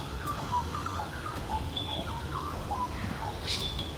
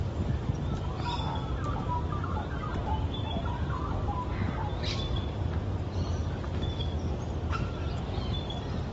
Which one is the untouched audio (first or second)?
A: second